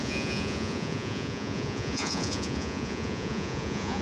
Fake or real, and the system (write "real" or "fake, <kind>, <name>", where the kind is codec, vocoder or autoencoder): fake, vocoder, Vocos